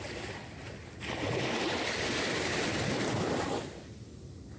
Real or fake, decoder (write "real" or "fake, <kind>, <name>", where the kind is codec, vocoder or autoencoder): real